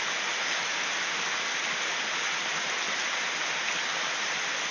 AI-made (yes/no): no